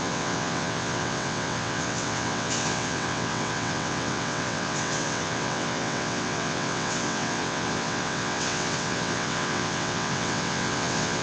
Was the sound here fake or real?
fake